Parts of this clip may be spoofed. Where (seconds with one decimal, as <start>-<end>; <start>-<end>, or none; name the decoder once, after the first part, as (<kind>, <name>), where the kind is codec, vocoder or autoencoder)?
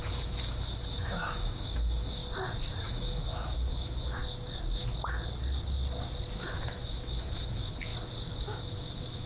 0.0-2.2 (autoencoder, DAC-VAE); 2.8-4.2; 6.5-7.9; 8.4-9.3